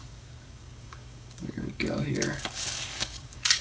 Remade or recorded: remade